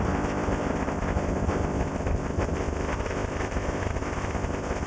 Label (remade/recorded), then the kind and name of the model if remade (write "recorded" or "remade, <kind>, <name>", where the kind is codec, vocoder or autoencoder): remade, codec, ZipCodec